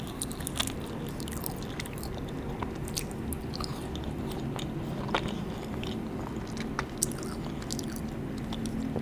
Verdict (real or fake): real